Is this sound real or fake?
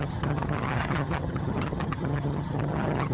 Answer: fake